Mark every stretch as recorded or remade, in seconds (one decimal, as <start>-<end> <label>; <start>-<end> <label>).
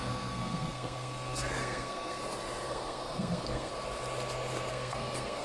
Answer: 0.0-2.2 remade; 2.2-2.7 recorded; 2.7-3.7 remade; 3.7-4.7 recorded; 4.7-5.4 remade